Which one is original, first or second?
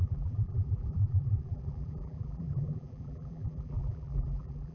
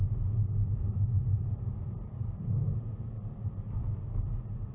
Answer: second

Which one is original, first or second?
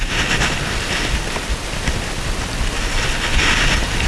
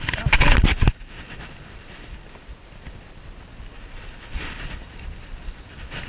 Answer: first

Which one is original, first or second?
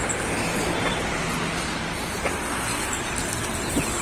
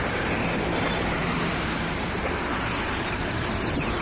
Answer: first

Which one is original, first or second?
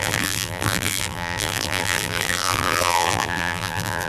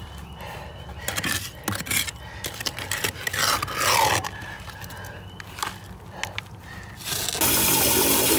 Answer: second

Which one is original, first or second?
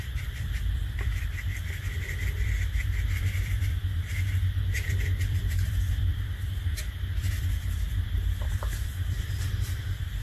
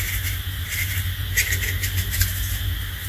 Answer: second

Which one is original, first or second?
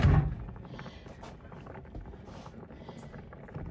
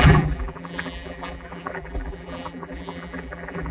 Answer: first